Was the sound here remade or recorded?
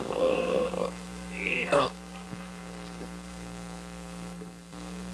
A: remade